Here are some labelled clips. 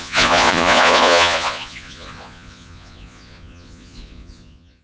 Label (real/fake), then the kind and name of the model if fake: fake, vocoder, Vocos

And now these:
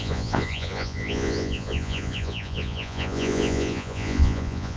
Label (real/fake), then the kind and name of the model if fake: fake, vocoder, Vocos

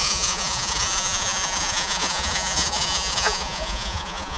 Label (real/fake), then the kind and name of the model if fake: fake, vocoder, Vocos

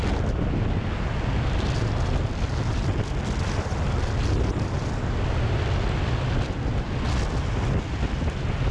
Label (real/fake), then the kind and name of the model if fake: real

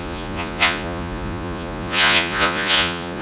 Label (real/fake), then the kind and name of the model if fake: fake, vocoder, Vocos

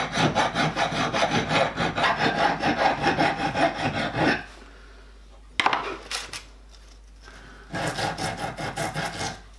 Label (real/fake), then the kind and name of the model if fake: real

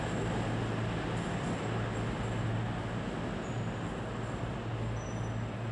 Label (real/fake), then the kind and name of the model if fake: real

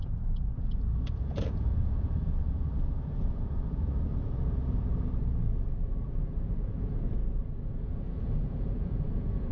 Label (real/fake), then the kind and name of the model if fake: fake, vocoder, Vocos